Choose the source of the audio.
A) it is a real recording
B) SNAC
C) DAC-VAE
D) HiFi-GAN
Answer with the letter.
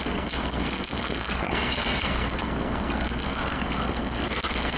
B